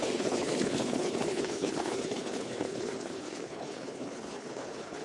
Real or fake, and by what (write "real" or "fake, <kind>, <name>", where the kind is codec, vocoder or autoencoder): fake, codec, HILCodec